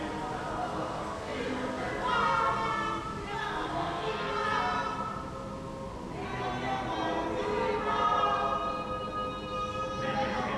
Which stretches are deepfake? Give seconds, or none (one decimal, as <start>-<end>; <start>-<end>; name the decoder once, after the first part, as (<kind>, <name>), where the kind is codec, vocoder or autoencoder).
0.5-1.4 (codec, SNAC); 3.4-4.3